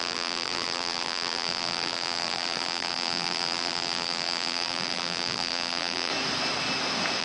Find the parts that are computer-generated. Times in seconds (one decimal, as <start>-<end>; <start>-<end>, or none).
0.0-6.1